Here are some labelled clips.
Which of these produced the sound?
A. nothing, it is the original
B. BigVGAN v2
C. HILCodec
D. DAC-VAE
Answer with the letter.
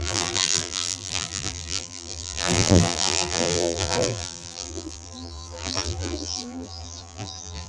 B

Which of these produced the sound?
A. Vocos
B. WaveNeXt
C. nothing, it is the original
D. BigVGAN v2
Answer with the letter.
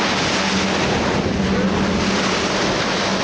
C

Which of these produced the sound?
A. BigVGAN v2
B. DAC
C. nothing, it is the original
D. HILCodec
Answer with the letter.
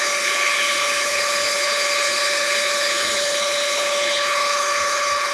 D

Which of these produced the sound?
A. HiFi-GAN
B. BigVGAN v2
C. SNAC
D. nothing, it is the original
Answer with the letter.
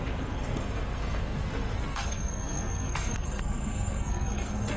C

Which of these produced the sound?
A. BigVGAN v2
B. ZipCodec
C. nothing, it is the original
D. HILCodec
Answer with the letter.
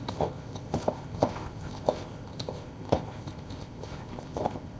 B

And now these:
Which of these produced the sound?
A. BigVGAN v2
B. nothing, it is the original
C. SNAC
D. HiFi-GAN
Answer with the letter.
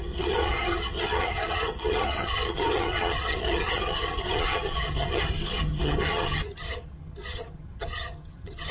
D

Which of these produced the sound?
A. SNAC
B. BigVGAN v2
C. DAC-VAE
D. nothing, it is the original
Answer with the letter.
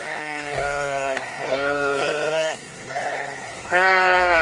A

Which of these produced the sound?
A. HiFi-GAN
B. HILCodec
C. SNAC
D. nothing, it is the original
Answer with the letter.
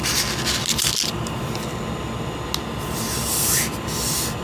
D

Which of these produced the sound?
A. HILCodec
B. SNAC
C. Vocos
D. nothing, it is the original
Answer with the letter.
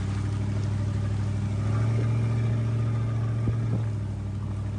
D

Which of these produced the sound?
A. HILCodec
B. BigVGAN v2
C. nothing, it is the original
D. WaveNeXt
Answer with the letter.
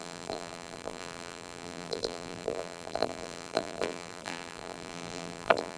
B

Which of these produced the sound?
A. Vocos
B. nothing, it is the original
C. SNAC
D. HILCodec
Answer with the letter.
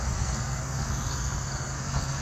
C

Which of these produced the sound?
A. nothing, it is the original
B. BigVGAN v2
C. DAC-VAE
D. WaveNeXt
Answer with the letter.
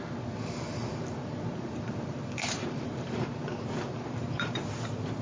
B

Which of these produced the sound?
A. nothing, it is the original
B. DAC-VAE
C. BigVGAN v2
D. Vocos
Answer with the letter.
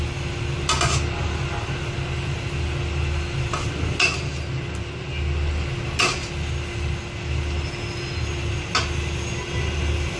A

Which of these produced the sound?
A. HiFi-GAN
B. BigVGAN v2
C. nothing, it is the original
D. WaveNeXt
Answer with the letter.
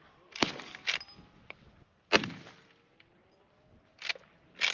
C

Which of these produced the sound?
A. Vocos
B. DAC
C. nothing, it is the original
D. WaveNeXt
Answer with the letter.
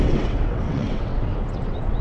D